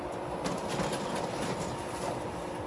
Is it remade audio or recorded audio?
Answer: recorded